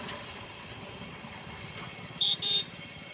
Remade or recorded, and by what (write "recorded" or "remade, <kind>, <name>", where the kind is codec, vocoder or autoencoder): remade, vocoder, BigVGAN v2